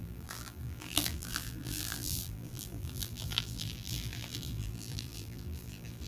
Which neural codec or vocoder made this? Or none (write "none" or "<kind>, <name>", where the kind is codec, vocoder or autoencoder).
vocoder, BigVGAN v2